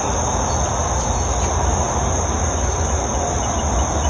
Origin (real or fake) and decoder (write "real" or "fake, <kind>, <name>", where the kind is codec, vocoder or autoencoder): real